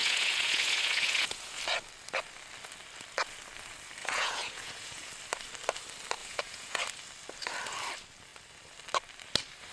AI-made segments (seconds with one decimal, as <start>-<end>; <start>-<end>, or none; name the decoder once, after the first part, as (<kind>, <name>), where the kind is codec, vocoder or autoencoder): 0.0-1.6 (vocoder, Vocos); 4.0-5.1; 6.2-6.8